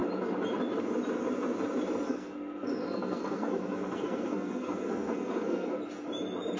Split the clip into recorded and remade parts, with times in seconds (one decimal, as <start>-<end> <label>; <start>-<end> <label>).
0.0-2.1 recorded; 2.1-5.8 remade; 5.8-6.6 recorded